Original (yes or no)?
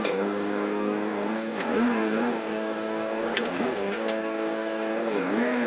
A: no